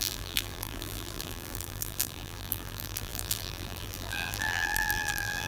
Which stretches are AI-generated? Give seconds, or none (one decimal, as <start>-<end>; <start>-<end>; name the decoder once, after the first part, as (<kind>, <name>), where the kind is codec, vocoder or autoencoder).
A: 0.0-5.5 (vocoder, BigVGAN v2)

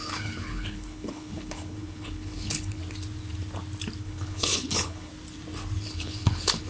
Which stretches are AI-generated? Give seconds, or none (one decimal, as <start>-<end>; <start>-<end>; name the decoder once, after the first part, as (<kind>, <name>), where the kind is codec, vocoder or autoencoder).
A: 0.0-2.8 (codec, HILCodec); 4.0-5.1; 5.8-6.7

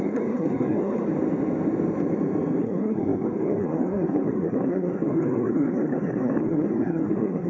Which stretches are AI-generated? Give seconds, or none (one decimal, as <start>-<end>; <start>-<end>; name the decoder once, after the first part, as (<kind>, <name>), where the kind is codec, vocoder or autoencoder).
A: 0.0-1.1 (codec, SNAC); 2.6-7.5

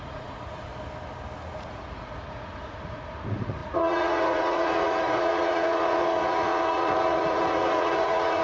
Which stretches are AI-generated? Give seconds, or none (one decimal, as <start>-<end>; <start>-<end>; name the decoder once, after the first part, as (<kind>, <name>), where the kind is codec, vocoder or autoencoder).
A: 0.0-0.7 (vocoder, Vocos); 1.6-8.4

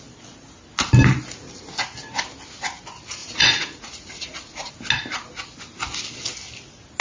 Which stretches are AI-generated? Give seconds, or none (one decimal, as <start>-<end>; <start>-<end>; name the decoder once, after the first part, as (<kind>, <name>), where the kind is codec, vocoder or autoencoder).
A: 3.2-4.7 (vocoder, Vocos)

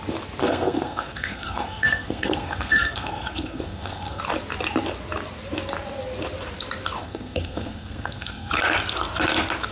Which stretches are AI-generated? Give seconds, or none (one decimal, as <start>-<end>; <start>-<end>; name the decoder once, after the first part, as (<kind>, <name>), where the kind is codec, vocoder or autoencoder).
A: 0.4-4.2 (codec, SNAC); 7.0-8.5